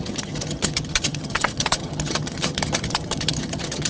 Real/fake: fake